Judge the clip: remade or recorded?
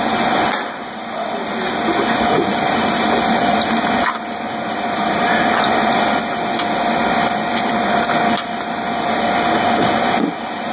recorded